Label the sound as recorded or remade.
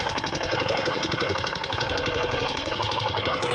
remade